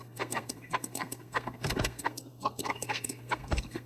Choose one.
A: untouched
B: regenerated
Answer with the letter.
B